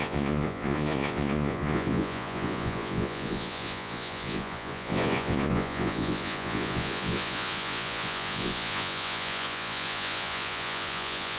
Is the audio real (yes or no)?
no